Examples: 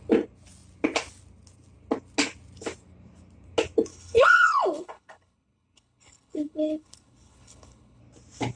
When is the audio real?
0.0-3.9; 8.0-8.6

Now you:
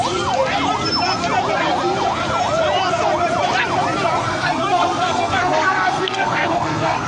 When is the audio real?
0.0-4.2

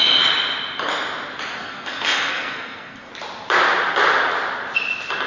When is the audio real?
0.0-1.6; 3.1-5.3

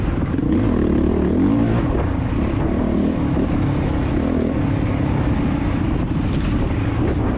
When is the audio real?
0.0-7.4

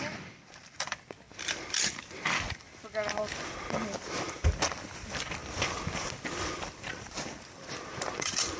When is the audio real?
none

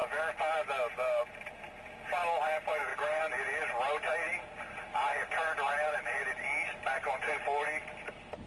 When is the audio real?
0.0-8.5